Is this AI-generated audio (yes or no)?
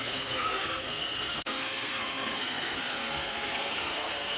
yes